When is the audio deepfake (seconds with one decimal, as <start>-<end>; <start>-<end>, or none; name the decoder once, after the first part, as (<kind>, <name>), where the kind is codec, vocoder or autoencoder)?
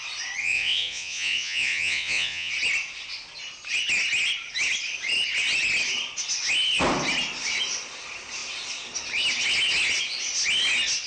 0.4-2.5 (vocoder, Vocos)